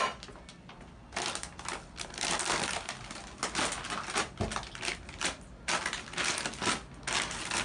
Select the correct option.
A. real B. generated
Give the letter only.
A